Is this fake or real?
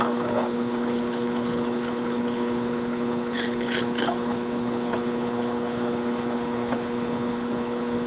fake